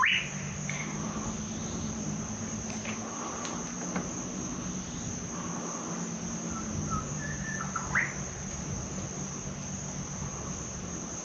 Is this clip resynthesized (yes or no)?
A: no